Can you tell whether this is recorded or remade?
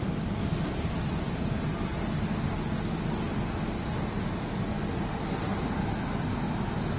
recorded